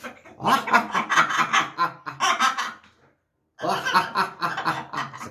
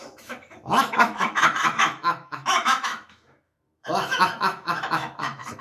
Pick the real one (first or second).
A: first